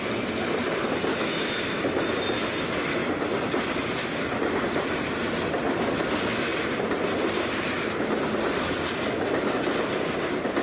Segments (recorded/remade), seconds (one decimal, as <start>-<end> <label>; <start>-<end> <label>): 0.0-1.1 recorded; 1.1-2.0 remade; 2.0-10.6 recorded